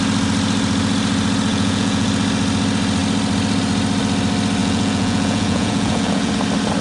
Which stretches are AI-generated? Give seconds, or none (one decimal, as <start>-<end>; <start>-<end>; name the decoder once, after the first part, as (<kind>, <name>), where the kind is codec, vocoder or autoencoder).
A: 1.5-2.1 (vocoder, Vocos); 4.6-6.3